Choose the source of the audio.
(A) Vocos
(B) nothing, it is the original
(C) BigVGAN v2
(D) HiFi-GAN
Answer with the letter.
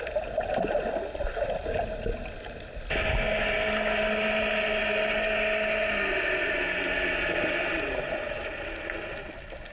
B